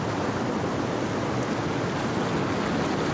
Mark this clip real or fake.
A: real